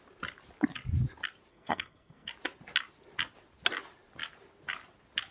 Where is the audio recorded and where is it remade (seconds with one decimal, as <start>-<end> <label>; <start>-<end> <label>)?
0.0-1.5 recorded; 1.5-2.3 remade; 2.3-5.3 recorded